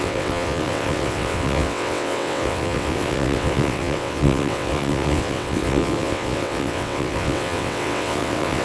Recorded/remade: remade